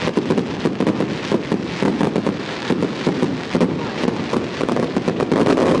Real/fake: real